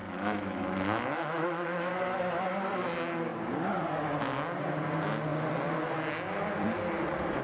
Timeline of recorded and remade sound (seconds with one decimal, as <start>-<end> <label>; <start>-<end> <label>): 0.0-1.9 remade; 1.9-7.4 recorded

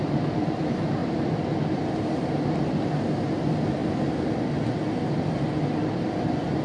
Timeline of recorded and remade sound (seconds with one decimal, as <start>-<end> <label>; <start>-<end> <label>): 0.0-6.6 recorded

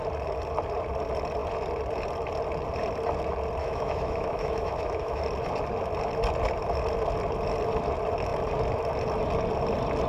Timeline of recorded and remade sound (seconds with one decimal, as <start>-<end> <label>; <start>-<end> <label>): 0.0-3.6 recorded; 3.6-5.2 remade; 5.2-10.1 recorded

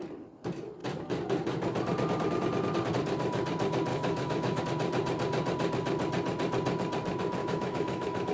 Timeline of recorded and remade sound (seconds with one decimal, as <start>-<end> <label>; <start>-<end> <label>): 0.0-3.9 recorded; 3.9-4.6 remade; 4.6-7.4 recorded; 7.4-8.3 remade

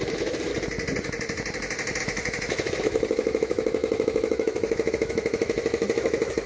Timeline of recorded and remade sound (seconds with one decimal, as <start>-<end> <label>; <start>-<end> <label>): 0.0-0.5 remade; 0.5-2.0 recorded; 2.0-6.5 remade

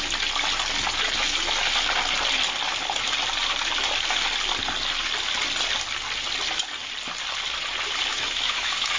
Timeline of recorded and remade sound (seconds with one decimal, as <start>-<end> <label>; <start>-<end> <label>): 0.0-8.1 recorded; 8.1-9.0 remade

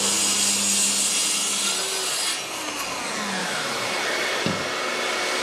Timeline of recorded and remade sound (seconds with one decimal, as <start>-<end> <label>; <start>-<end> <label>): 0.0-3.4 recorded; 3.4-4.0 remade; 4.0-5.4 recorded